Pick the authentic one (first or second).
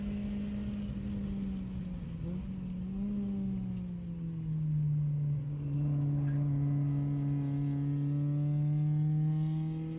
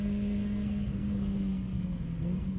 first